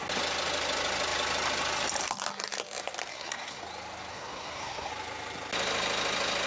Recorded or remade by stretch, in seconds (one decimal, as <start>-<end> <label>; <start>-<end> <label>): 0.0-3.1 recorded; 3.1-3.6 remade; 3.6-4.1 recorded; 4.1-4.9 remade; 4.9-6.5 recorded